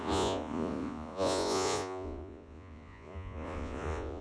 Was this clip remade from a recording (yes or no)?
yes